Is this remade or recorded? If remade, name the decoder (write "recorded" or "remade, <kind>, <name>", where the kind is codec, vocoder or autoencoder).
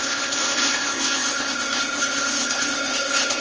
remade, codec, ZipCodec